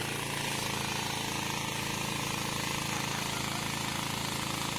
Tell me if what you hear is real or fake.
real